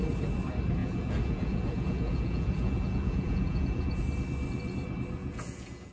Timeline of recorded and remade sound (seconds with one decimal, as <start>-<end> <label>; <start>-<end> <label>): 0.0-0.8 recorded; 0.8-4.0 remade; 4.0-5.2 recorded; 5.2-5.9 remade